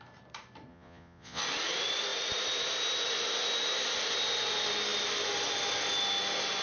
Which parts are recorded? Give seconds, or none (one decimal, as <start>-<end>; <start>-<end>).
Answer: 0.0-0.7; 1.4-6.6